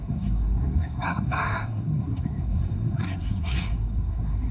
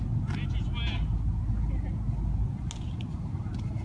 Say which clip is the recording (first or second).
second